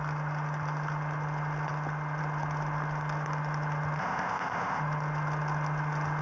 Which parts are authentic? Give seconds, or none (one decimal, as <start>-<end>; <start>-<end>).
0.0-4.0; 4.8-6.2

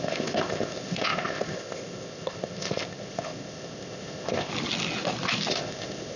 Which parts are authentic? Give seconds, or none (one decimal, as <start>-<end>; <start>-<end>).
4.5-5.5